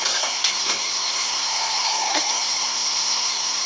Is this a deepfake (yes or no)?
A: yes